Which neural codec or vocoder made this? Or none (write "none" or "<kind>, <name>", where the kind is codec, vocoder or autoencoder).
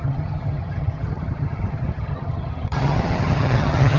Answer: vocoder, HiFi-GAN